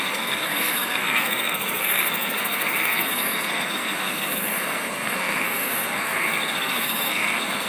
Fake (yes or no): yes